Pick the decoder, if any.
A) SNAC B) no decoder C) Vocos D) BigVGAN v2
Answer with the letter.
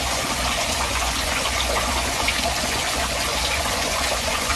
C